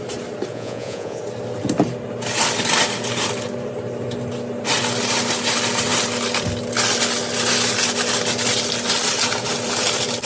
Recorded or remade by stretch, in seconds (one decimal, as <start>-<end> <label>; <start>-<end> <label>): 0.0-0.5 recorded; 0.5-1.2 remade; 1.2-10.3 recorded